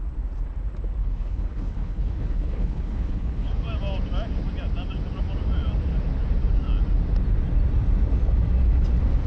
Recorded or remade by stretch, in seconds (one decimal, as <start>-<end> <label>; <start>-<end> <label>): 0.0-1.0 recorded; 1.0-3.6 remade; 3.6-9.3 recorded